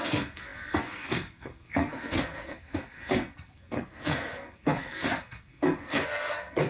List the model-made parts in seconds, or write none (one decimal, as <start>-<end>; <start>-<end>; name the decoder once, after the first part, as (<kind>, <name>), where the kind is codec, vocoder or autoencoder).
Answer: 0.0-6.7 (codec, SNAC)